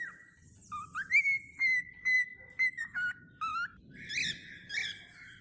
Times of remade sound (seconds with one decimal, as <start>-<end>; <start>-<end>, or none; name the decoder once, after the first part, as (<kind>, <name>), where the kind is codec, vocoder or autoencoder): none